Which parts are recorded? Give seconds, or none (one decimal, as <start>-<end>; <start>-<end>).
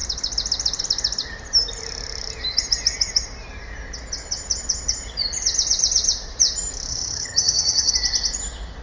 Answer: 0.0-6.9; 7.9-8.8